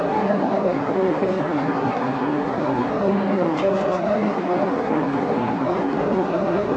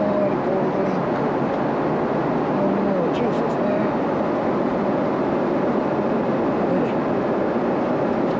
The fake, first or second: first